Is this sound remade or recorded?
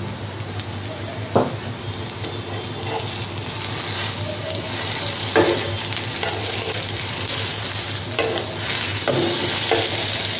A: recorded